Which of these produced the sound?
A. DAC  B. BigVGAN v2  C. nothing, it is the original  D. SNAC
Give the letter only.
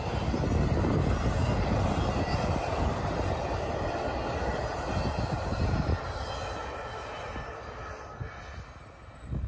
C